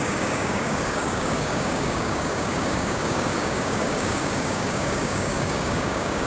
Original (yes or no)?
no